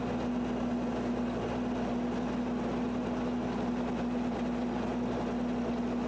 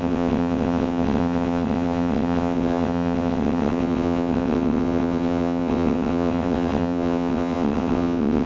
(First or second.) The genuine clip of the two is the first